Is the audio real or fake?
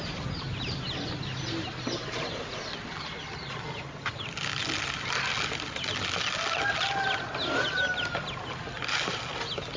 real